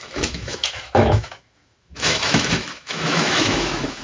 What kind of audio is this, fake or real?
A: fake